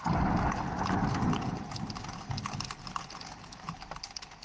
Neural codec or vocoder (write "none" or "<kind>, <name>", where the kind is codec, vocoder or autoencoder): none